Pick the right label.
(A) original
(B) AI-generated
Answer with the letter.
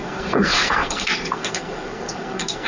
B